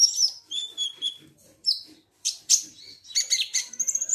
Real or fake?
fake